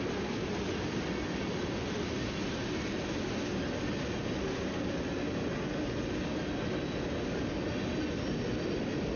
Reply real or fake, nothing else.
real